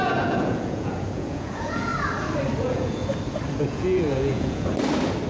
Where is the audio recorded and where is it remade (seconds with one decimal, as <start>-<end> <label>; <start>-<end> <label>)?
0.0-1.9 remade; 1.9-2.6 recorded; 2.6-3.0 remade; 3.0-3.6 recorded; 3.6-4.7 remade; 4.7-5.3 recorded